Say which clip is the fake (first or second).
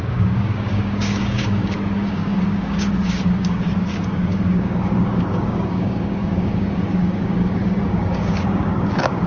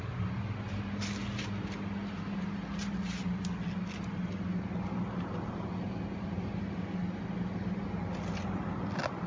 first